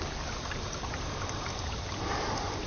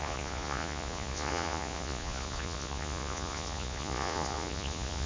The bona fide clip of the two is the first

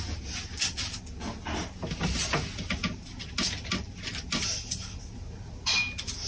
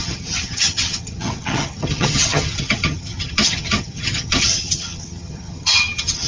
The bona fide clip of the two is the first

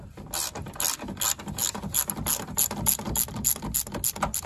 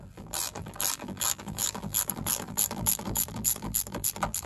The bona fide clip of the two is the first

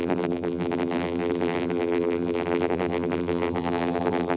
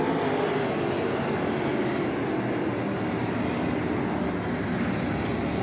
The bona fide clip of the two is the second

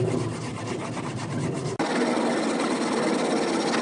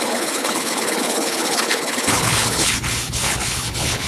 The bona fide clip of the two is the first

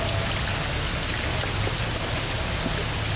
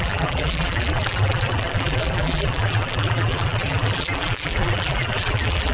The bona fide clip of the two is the first